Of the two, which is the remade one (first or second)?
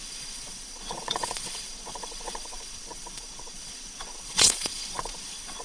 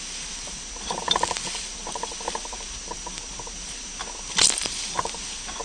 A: first